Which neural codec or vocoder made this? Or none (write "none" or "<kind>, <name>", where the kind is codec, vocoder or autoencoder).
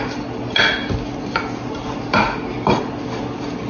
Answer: none